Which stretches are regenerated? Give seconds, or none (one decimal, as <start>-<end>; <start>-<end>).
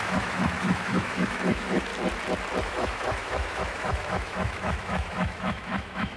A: 0.0-1.9; 2.6-6.2